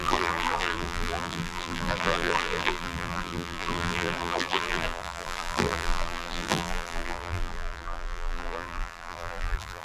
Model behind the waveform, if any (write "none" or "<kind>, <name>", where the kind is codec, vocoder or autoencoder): vocoder, BigVGAN v2